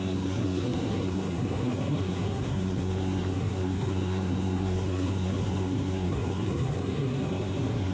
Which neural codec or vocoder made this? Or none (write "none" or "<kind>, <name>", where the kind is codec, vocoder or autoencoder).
codec, SNAC